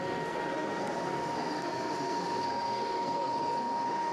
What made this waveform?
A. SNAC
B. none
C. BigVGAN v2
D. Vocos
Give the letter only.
A